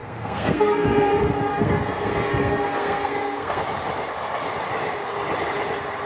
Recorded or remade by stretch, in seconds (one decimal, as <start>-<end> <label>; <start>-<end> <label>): 0.0-1.1 remade; 1.1-1.5 recorded; 1.5-3.6 remade; 3.6-6.1 recorded